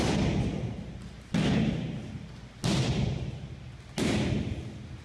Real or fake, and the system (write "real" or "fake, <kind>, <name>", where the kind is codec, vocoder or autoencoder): real